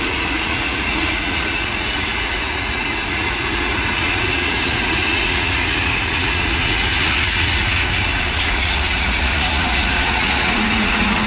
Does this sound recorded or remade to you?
remade